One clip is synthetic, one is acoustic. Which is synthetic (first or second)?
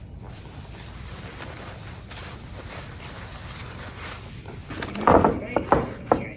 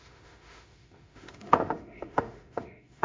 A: second